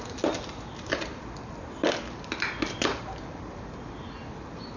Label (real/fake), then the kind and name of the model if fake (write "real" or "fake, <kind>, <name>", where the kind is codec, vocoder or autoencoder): real